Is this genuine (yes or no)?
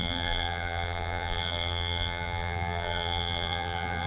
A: no